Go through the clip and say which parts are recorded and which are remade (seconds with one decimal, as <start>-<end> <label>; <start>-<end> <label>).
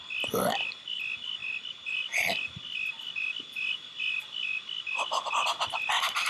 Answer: 0.0-6.3 recorded